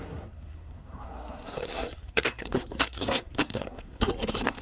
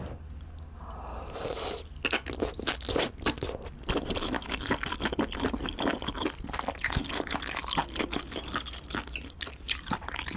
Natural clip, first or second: second